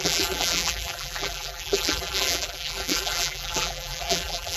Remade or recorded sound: remade